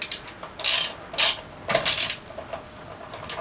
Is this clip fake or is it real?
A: real